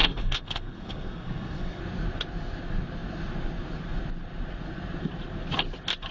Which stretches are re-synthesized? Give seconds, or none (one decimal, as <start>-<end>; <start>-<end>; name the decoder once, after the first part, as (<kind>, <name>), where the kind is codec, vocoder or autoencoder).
0.0-1.8 (codec, SNAC)